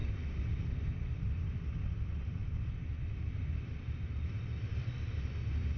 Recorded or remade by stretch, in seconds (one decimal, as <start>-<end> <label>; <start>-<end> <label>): 0.0-5.8 recorded